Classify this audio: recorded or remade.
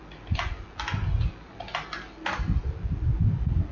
recorded